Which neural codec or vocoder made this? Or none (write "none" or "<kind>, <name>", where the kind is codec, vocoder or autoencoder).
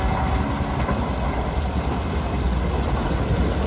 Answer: none